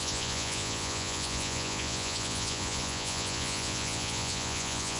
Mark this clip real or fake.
fake